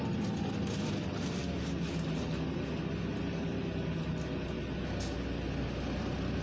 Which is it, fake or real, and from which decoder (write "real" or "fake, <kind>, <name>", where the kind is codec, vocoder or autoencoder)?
real